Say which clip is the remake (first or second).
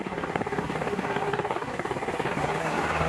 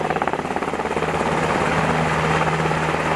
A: first